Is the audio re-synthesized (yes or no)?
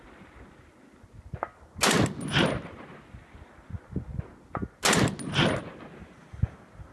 no